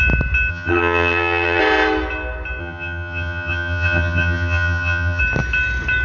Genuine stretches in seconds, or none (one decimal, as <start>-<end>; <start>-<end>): 0.0-0.5; 1.6-2.6; 5.2-6.0